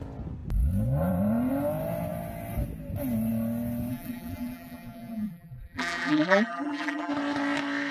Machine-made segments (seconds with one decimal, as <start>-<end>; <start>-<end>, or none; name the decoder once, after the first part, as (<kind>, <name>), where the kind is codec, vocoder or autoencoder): 3.9-7.1 (vocoder, BigVGAN v2)